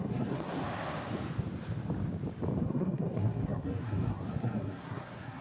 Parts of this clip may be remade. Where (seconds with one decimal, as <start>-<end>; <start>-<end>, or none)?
0.0-0.6; 2.6-5.4